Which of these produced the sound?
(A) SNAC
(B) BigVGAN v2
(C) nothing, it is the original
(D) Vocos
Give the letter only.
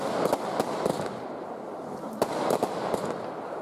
C